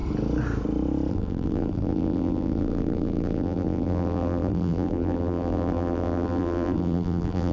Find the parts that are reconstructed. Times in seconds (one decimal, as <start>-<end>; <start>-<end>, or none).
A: 1.1-7.5